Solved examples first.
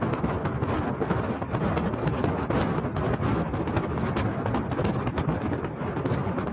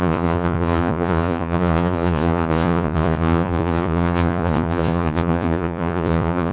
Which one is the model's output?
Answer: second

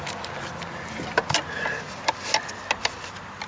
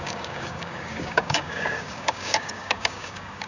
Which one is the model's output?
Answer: second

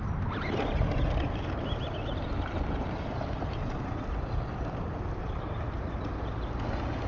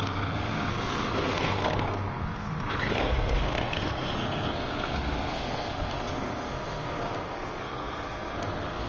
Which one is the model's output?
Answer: second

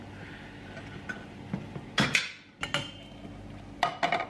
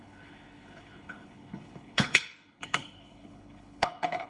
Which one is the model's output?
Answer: second